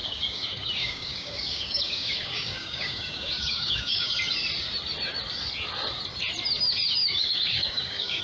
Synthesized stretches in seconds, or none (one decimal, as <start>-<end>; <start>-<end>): 0.0-4.2; 7.0-8.2